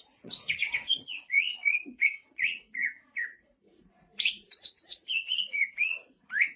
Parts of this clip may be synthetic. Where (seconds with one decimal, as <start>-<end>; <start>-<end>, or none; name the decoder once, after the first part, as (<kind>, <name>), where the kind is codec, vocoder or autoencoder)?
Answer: 0.0-6.6 (vocoder, Vocos)